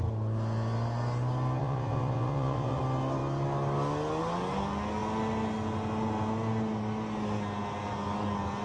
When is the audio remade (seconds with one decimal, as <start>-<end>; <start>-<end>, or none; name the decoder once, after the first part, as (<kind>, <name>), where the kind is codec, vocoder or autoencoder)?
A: 1.6-2.8 (vocoder, Vocos)

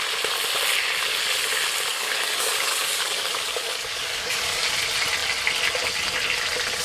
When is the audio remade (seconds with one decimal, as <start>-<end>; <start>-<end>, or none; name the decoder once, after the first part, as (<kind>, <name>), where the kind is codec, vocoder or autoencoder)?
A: 1.9-4.7 (codec, DAC)

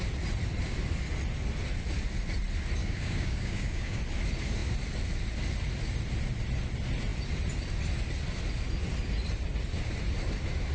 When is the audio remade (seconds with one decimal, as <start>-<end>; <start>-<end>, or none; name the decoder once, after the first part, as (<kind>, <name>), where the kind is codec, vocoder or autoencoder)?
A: 2.8-4.0 (codec, DAC)

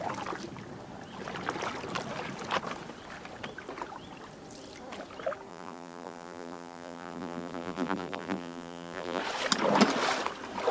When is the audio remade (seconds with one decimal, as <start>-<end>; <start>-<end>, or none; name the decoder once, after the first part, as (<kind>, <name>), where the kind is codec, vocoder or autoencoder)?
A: 5.5-9.2 (vocoder, BigVGAN v2)

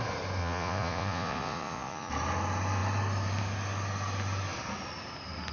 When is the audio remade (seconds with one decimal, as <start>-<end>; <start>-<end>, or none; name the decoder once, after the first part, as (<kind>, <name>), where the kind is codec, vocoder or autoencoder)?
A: 0.4-2.1 (vocoder, Vocos)

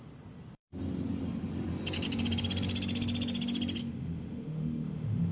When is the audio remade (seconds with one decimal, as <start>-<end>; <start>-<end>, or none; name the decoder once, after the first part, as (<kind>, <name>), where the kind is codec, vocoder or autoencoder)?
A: 3.8-5.3 (autoencoder, DAC-VAE)